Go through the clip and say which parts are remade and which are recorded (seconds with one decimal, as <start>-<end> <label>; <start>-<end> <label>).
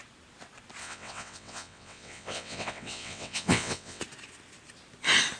0.0-0.8 recorded; 0.8-4.0 remade; 4.0-5.4 recorded